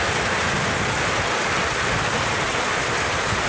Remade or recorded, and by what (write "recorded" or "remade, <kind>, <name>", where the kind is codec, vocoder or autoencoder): recorded